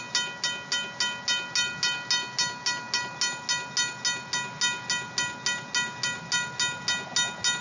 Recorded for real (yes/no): yes